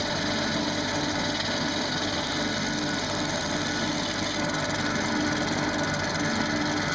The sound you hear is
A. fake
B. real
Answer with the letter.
B